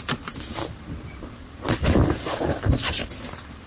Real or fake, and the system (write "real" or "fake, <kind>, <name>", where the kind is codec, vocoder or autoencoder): fake, vocoder, BigVGAN v2